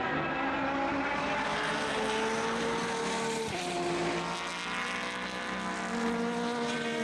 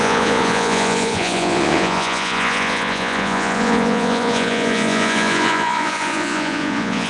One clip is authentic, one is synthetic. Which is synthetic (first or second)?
second